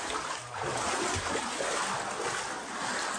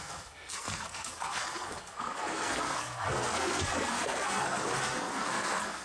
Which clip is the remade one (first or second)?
second